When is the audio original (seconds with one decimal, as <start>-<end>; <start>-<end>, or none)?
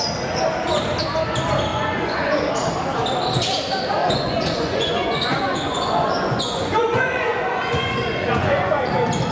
0.0-1.7; 2.5-4.0; 8.9-9.3